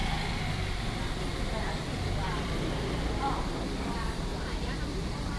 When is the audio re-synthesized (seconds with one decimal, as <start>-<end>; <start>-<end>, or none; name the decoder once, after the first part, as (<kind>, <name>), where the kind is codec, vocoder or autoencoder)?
3.2-4.3 (vocoder, BigVGAN v2); 4.8-5.4